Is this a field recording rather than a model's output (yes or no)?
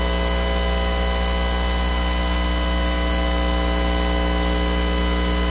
yes